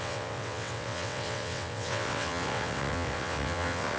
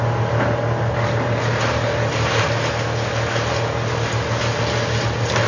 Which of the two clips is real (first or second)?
second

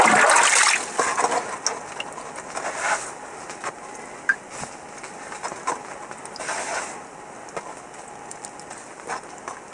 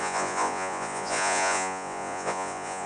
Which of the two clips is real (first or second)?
first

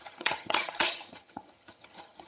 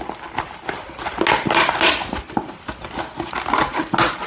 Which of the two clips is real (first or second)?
second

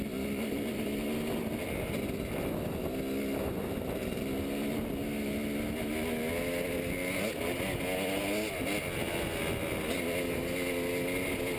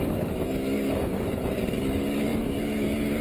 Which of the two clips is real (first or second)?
first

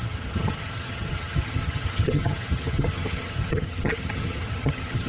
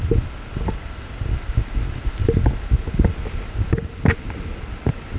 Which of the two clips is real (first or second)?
second